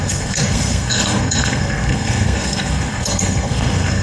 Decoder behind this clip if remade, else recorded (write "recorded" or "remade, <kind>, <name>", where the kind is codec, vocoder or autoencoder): remade, codec, SNAC